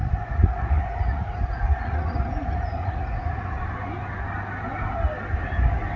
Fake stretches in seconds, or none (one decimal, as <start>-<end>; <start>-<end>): 0.0-3.6